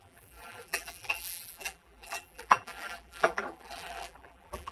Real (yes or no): no